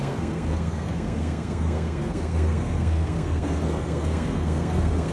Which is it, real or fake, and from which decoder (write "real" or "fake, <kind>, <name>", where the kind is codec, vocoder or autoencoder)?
fake, codec, SNAC